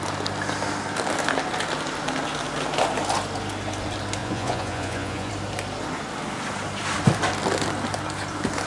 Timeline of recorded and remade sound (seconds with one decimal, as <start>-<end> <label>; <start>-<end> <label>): 0.0-4.2 recorded; 4.2-5.3 remade; 5.3-8.7 recorded